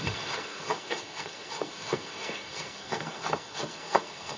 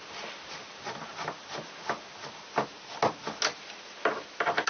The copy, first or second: first